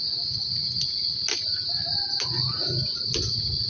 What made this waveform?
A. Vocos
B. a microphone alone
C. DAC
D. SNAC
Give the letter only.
B